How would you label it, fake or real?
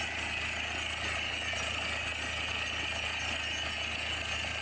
real